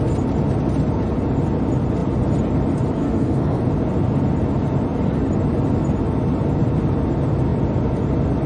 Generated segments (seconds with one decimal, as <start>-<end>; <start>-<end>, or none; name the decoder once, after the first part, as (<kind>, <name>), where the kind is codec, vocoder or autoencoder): 3.0-3.6 (codec, SNAC)